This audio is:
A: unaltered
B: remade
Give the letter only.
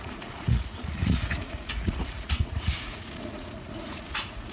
B